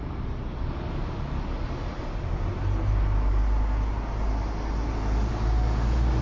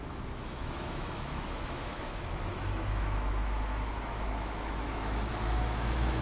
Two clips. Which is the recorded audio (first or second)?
first